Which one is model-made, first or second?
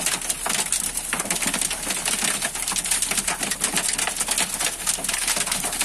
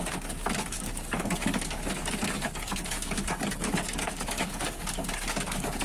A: second